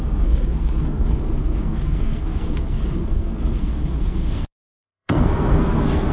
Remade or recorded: remade